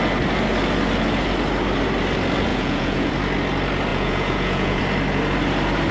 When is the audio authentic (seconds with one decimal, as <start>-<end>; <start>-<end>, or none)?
0.0-2.5; 3.1-3.9; 4.8-5.9